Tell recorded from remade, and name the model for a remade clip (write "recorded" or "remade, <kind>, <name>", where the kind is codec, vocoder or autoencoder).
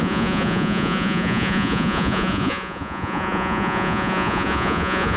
remade, vocoder, Vocos